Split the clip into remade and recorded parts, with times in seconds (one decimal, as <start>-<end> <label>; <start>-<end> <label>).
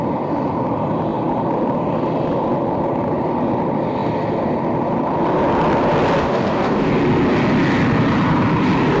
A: 0.0-6.2 recorded; 6.2-6.9 remade; 6.9-9.0 recorded